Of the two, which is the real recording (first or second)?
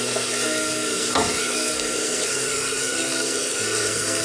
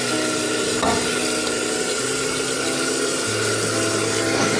second